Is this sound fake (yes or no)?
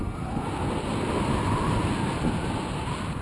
no